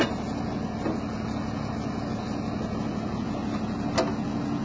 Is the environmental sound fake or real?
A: real